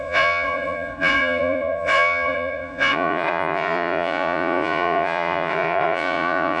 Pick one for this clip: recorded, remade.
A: remade